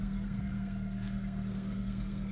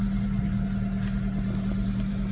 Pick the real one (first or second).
second